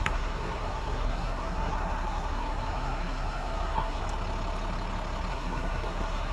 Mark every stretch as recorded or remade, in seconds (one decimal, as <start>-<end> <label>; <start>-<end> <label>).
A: 0.0-4.0 remade; 4.0-5.3 recorded; 5.3-6.3 remade